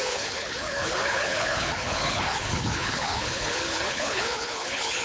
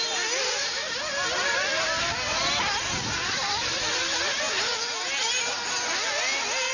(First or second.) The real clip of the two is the second